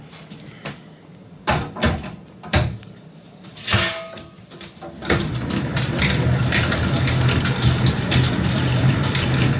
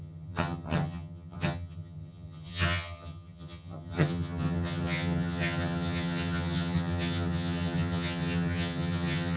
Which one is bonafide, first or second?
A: first